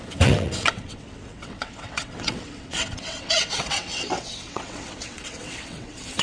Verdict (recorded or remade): remade